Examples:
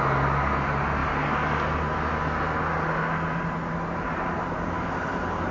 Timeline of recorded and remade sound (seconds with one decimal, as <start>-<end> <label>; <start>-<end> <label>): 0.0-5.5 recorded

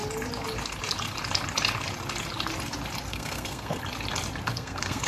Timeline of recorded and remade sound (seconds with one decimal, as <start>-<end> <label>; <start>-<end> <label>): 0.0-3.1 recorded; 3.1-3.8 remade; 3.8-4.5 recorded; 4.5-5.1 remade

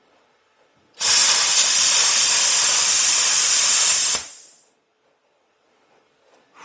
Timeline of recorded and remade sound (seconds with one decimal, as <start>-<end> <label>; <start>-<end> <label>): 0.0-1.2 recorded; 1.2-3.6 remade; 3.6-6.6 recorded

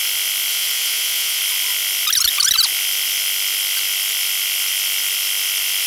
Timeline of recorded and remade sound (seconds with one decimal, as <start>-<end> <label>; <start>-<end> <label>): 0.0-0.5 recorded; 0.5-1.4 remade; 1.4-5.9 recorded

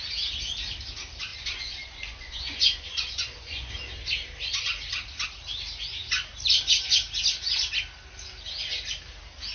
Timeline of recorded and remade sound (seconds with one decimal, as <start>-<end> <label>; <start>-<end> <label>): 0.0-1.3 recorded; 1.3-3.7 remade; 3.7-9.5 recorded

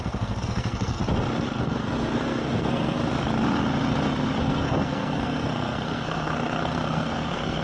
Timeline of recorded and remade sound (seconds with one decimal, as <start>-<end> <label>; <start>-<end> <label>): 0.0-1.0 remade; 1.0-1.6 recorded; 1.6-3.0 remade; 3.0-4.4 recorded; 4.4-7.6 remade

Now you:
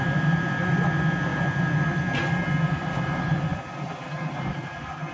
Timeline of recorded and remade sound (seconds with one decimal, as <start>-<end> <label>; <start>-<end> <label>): 0.0-5.1 recorded

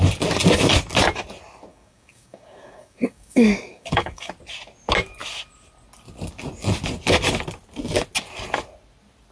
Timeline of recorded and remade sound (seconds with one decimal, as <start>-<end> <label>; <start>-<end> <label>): 0.0-1.7 recorded; 1.7-4.3 remade; 4.3-9.3 recorded